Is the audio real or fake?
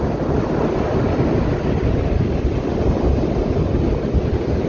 real